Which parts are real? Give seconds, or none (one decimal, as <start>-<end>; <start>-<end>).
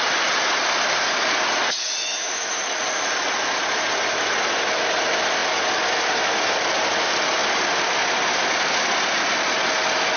0.0-2.0; 2.6-10.2